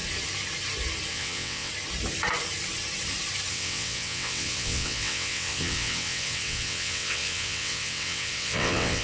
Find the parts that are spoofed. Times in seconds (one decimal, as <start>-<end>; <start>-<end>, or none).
1.1-1.7; 3.5-9.0